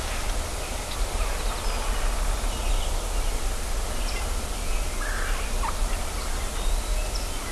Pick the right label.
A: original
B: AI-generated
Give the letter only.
A